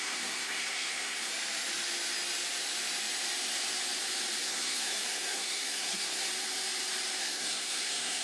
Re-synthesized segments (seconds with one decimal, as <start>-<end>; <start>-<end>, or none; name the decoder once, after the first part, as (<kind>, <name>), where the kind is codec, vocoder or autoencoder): 0.0-1.3 (codec, SNAC); 4.4-6.3; 7.2-8.2